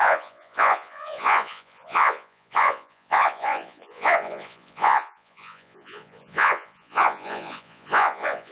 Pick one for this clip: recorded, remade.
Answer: remade